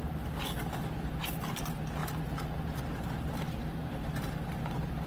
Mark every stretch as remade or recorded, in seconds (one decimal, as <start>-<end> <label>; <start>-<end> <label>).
0.0-5.1 recorded